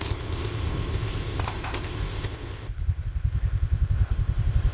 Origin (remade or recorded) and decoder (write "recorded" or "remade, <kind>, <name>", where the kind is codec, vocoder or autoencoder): remade, codec, ZipCodec